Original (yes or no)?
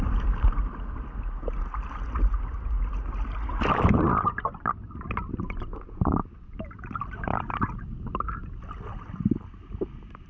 yes